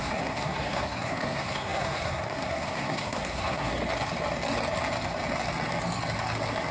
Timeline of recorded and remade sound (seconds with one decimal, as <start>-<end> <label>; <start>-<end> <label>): 0.0-3.7 remade; 3.7-6.7 recorded